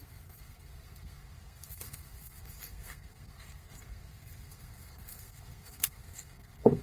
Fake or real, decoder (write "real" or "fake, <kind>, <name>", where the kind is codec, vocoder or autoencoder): fake, codec, SNAC